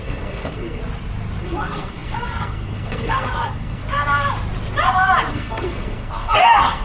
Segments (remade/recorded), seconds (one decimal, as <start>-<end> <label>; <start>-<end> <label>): 0.0-0.8 remade; 0.8-1.4 recorded; 1.4-3.8 remade; 3.8-5.3 recorded; 5.3-6.8 remade